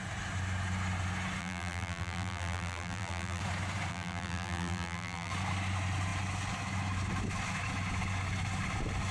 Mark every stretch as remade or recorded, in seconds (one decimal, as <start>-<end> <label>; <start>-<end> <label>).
0.0-1.4 recorded; 1.4-3.4 remade; 3.4-3.9 recorded; 3.9-5.3 remade; 5.3-9.1 recorded